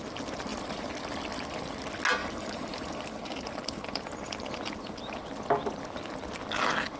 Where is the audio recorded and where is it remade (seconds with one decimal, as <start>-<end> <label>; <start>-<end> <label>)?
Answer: 0.0-2.2 recorded; 2.2-5.3 remade; 5.3-7.0 recorded